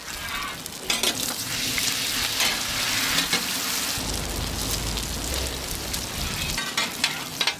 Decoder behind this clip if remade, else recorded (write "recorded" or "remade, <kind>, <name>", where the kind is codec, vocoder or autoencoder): recorded